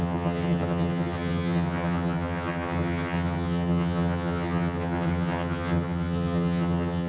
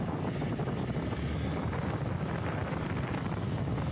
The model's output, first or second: first